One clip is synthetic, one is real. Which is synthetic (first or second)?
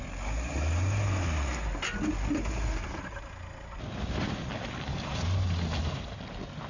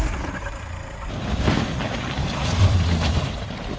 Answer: second